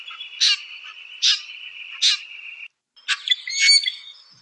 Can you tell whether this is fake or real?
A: real